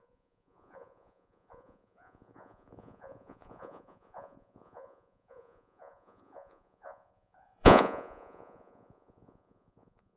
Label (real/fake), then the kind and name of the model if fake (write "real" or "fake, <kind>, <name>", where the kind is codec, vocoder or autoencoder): fake, vocoder, Vocos